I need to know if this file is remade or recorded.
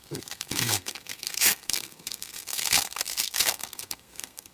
remade